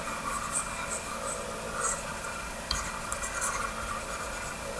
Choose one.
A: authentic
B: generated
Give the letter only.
A